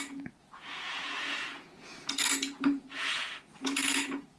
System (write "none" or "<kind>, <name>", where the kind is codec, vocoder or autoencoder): vocoder, Vocos